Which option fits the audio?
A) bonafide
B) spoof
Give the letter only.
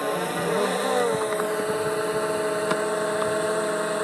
A